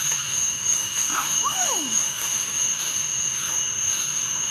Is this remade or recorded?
remade